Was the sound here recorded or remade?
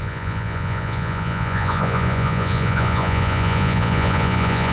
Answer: remade